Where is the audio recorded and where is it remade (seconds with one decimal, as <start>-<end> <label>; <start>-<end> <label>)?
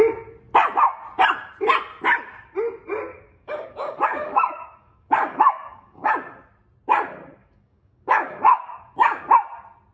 0.0-3.1 recorded; 3.1-6.1 remade; 6.1-7.4 recorded; 7.4-9.2 remade; 9.2-9.9 recorded